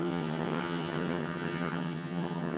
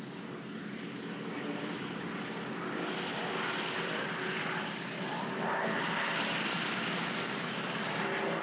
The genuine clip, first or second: second